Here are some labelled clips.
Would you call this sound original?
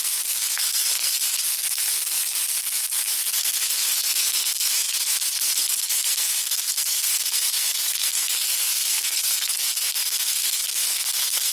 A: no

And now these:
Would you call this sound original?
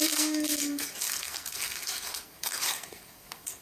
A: no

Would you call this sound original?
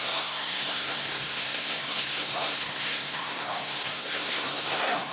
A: no